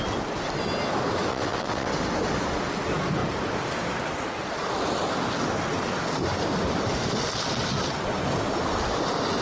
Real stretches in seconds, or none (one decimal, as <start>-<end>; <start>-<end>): 0.0-1.3; 1.9-9.4